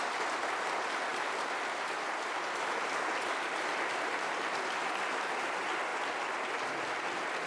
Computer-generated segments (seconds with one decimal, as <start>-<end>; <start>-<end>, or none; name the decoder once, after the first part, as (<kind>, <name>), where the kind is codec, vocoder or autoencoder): none